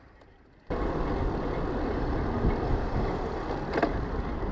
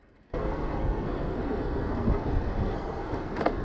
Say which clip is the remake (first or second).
second